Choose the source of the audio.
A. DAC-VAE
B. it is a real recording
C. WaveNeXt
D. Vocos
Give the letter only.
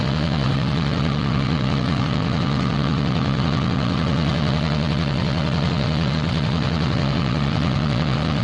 C